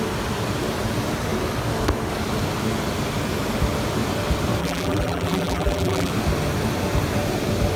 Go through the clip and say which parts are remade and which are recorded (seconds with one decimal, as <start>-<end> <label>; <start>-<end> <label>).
0.0-4.6 recorded; 4.6-6.1 remade; 6.1-7.8 recorded